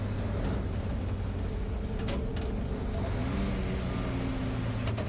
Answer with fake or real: real